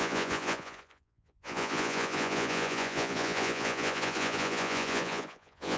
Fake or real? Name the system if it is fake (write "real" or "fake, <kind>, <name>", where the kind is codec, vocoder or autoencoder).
fake, vocoder, Vocos